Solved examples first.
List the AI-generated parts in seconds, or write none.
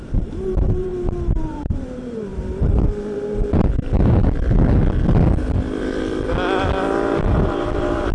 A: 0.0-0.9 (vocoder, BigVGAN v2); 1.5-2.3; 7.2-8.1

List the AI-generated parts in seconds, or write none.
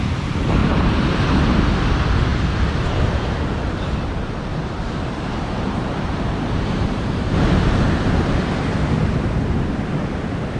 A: 0.6-1.6 (vocoder, BigVGAN v2); 2.3-3.2; 4.5-7.9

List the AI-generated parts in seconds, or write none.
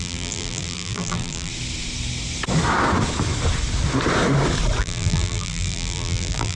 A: 0.0-1.5 (vocoder, BigVGAN v2); 4.8-6.6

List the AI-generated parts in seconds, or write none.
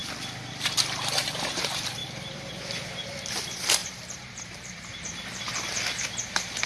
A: 0.5-6.7 (vocoder, BigVGAN v2)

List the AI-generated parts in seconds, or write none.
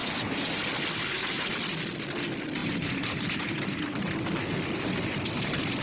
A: 0.0-0.5 (vocoder, BigVGAN v2); 2.6-4.0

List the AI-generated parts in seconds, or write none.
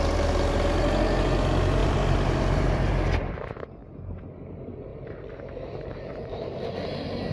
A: 1.8-2.9 (vocoder, BigVGAN v2); 4.9-6.6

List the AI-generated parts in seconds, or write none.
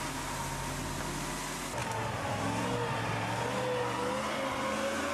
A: none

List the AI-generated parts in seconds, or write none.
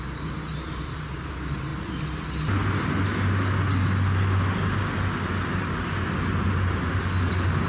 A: none